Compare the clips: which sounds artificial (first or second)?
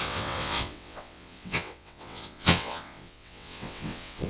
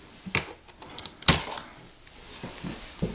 first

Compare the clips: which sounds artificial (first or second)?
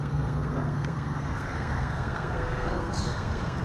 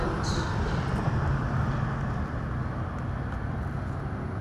first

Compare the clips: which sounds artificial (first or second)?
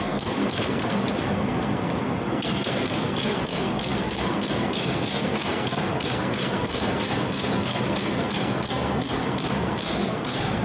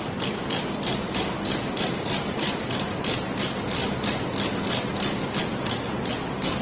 first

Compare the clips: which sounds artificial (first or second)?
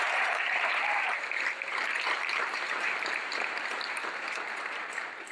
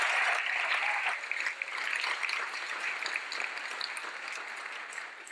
first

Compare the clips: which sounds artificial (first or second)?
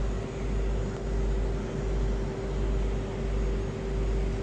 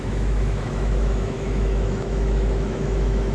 second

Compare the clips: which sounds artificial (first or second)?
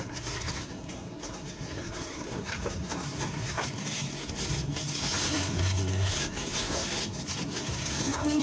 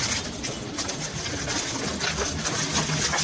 first